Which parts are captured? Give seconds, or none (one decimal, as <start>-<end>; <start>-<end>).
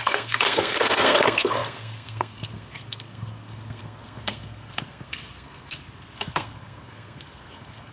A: none